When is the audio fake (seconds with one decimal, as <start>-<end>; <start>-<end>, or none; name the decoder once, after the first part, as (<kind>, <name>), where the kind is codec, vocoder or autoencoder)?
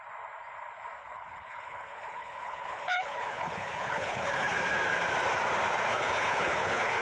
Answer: 1.0-4.6 (codec, HILCodec); 5.9-7.0